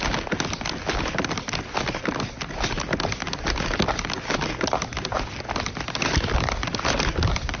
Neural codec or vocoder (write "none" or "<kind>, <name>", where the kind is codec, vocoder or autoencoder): none